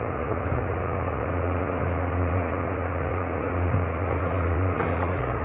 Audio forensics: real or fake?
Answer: fake